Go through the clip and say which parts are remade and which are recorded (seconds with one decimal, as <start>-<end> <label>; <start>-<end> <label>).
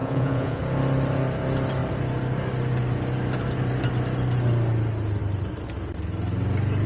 0.0-0.6 remade; 0.6-6.9 recorded